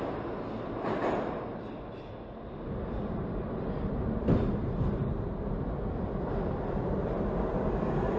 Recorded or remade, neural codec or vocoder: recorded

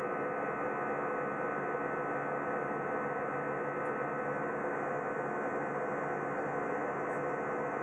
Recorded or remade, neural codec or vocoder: recorded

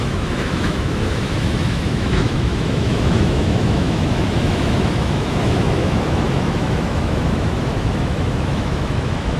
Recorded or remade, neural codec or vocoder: remade, autoencoder, DAC-VAE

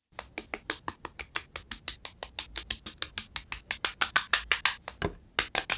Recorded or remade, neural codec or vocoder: recorded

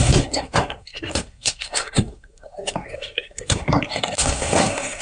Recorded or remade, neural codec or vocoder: remade, codec, SNAC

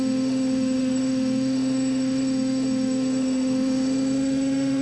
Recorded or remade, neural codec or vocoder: remade, autoencoder, DAC-VAE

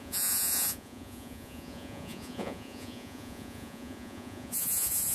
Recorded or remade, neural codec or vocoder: remade, vocoder, Vocos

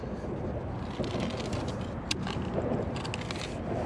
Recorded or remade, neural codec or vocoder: recorded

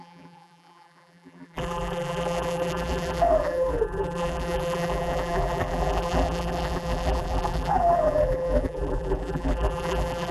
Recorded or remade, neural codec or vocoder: remade, vocoder, BigVGAN v2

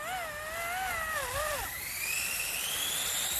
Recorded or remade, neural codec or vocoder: recorded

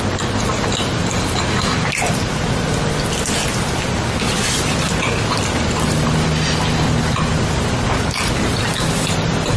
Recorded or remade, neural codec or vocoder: recorded